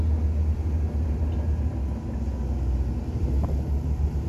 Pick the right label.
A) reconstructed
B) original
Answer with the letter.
B